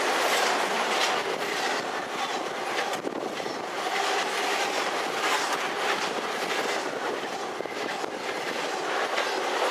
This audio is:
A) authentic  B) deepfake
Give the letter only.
A